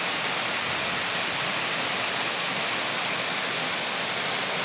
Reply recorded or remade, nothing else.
recorded